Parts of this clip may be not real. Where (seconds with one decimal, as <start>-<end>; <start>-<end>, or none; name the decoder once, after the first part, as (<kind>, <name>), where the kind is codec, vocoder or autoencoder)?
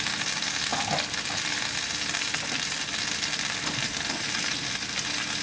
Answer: none